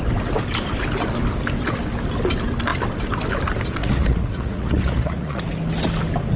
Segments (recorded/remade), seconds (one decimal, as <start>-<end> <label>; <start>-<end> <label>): 0.0-3.8 recorded; 3.8-5.4 remade; 5.4-6.4 recorded